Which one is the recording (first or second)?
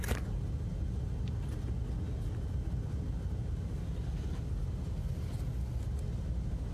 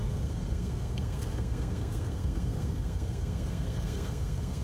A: first